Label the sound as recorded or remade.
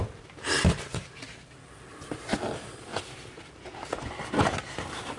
recorded